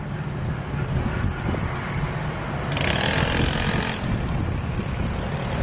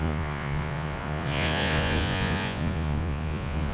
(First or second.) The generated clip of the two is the second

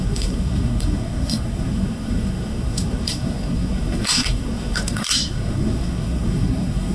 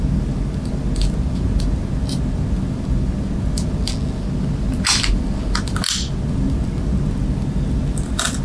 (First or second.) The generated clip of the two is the first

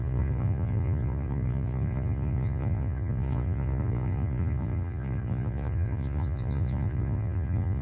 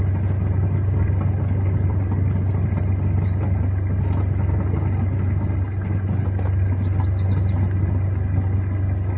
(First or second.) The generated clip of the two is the first